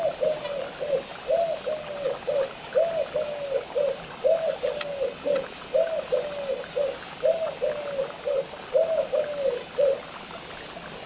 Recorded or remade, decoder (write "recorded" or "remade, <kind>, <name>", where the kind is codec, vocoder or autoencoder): recorded